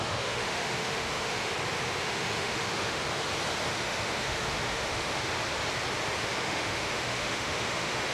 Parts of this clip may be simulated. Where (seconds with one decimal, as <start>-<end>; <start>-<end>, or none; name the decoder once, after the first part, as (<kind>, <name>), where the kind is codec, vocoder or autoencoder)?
0.0-1.5 (autoencoder, DAC-VAE); 2.0-3.0; 3.7-5.3; 6.2-8.1

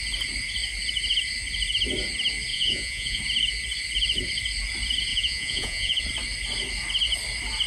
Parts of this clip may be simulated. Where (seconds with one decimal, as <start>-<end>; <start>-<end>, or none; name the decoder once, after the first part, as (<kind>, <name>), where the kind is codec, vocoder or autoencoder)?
2.5-3.2 (vocoder, Vocos); 5.1-6.0